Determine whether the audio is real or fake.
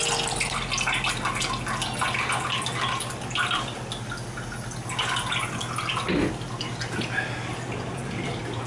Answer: real